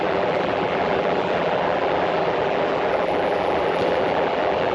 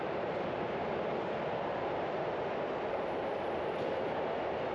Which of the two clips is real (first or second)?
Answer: second